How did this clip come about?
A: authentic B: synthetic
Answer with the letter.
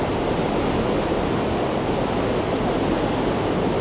A